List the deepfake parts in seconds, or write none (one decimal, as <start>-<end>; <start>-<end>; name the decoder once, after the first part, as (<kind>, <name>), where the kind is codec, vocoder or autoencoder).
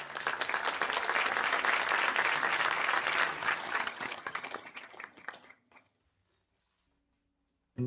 3.4-6.0 (vocoder, HiFi-GAN)